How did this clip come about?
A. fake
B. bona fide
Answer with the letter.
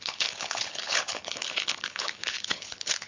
A